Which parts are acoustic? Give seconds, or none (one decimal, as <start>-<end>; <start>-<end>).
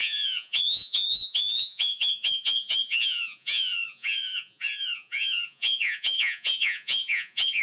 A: none